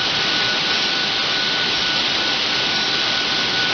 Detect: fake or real real